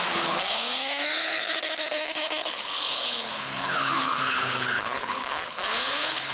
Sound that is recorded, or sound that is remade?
remade